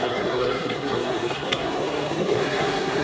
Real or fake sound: fake